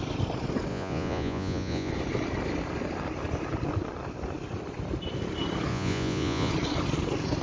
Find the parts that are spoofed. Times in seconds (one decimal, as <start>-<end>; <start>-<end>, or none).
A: 0.7-1.9; 5.7-6.5